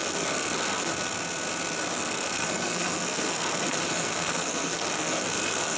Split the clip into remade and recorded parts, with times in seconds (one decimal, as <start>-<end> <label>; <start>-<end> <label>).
0.0-0.9 remade; 0.9-1.9 recorded; 1.9-5.8 remade

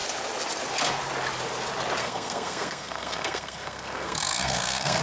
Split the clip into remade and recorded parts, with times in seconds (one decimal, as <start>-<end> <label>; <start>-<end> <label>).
0.0-2.0 recorded; 2.0-5.0 remade

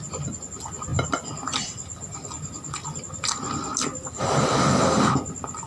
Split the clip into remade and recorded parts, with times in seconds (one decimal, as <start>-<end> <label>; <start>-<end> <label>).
0.0-5.7 recorded

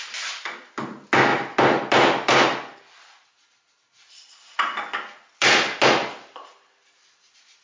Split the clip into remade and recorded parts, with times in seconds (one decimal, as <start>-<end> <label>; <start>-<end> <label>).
0.0-7.6 recorded

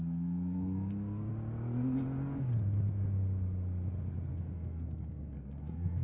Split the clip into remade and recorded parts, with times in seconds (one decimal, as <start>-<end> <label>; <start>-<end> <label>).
0.0-1.3 remade; 1.3-4.3 recorded; 4.3-6.0 remade

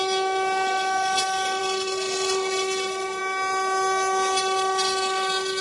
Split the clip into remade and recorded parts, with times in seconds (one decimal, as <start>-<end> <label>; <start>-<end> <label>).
0.0-5.6 recorded